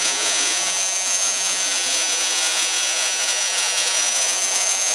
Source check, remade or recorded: remade